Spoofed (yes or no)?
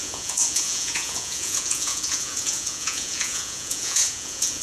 yes